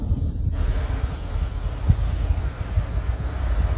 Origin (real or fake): real